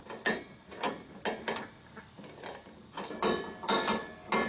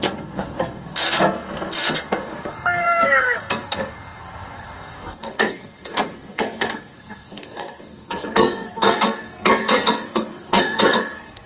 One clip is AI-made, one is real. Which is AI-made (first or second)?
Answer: second